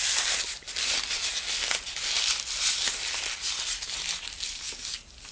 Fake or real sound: real